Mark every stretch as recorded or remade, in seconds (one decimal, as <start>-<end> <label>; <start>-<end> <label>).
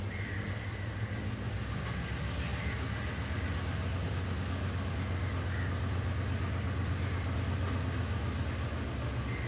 0.0-9.5 recorded